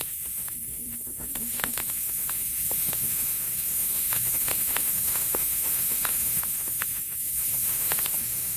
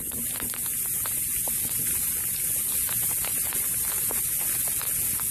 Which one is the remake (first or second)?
first